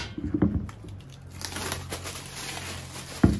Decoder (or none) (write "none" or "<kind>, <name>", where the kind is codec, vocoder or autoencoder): none